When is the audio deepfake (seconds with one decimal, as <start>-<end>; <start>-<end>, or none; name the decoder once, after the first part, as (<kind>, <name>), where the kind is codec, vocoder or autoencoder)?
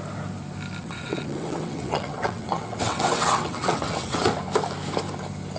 0.8-4.2 (vocoder, WaveNeXt)